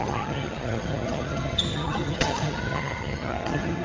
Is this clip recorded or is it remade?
remade